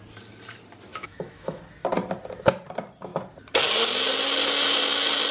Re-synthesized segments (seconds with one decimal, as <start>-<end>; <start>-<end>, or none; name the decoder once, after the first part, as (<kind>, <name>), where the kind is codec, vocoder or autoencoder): 0.9-1.6 (autoencoder, DAC-VAE)